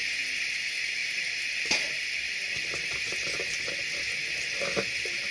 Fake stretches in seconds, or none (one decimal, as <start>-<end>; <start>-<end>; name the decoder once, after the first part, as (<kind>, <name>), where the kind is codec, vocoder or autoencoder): 1.0-3.6 (vocoder, BigVGAN v2)